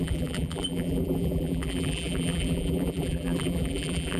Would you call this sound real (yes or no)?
no